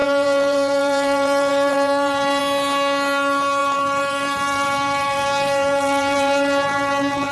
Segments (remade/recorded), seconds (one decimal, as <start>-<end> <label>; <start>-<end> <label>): 0.0-2.4 remade; 2.4-3.6 recorded; 3.6-7.3 remade